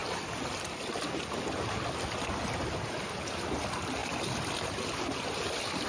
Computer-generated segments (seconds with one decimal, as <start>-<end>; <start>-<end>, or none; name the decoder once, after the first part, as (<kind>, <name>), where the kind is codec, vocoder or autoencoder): none